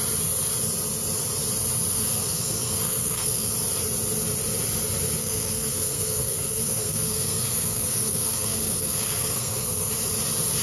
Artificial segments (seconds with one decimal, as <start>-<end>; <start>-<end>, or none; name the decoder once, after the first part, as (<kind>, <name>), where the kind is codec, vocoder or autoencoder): 1.9-3.5 (codec, SNAC); 5.2-9.9